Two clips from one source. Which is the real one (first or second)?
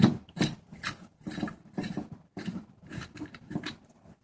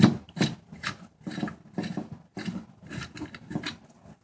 second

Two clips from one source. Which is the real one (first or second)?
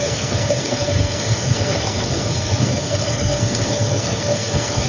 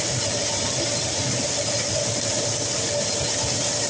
second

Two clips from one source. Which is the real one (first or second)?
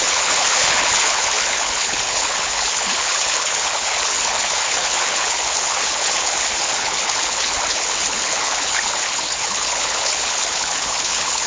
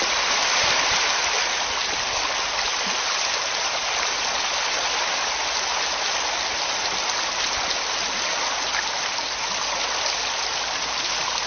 second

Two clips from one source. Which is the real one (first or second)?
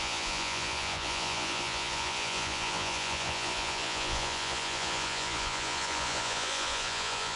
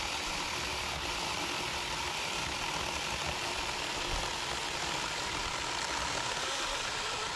second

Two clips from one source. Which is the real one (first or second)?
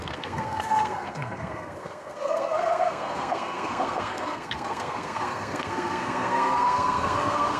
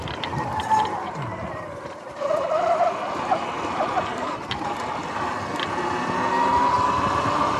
second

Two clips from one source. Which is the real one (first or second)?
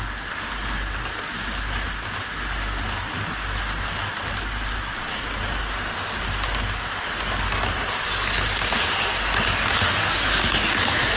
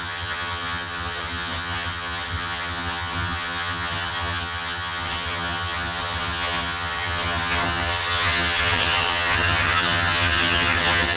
first